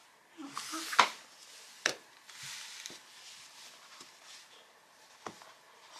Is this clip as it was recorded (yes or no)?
yes